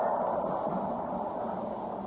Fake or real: fake